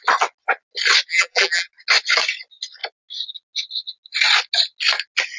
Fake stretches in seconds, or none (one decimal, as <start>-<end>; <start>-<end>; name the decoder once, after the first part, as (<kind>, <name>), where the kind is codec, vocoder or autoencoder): 1.1-1.7 (vocoder, BigVGAN v2)